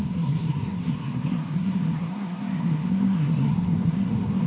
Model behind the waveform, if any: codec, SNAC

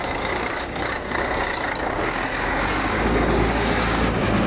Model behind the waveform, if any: codec, DAC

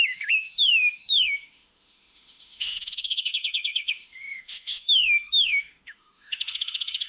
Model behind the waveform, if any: autoencoder, DAC-VAE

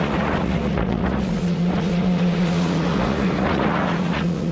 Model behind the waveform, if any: vocoder, Vocos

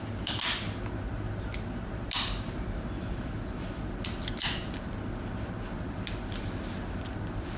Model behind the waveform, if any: none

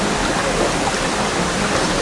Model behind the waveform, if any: none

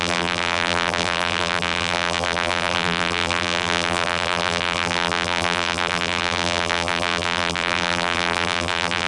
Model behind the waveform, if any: vocoder, BigVGAN v2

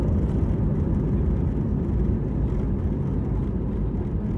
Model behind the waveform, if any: none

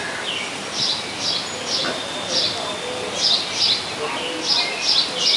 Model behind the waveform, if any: none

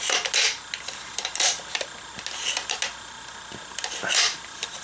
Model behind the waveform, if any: none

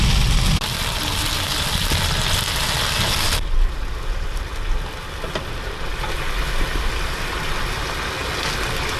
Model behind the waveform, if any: none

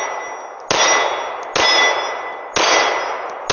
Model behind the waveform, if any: none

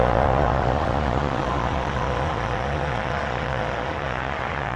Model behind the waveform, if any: vocoder, Vocos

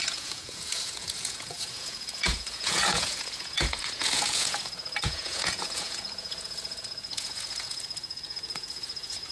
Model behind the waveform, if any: vocoder, Vocos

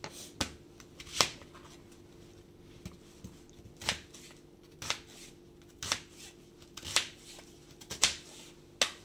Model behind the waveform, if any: none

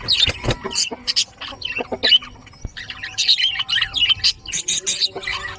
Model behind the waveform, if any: none